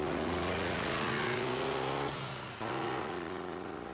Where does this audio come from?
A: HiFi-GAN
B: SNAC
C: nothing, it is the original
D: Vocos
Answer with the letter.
D